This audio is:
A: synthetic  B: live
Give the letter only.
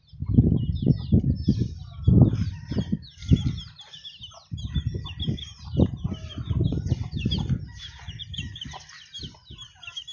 B